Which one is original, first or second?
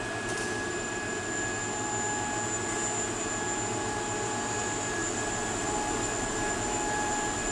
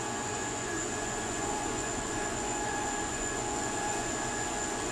first